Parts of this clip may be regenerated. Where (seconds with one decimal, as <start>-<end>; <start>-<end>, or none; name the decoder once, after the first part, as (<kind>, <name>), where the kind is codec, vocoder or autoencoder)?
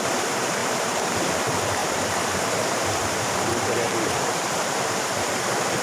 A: 0.6-1.3 (vocoder, BigVGAN v2); 1.8-5.3